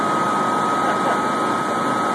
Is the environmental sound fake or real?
real